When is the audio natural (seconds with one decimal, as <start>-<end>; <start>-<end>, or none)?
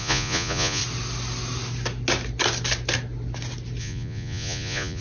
0.8-3.8